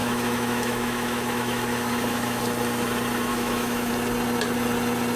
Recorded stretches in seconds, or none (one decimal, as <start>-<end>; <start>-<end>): 2.4-3.3; 3.9-5.2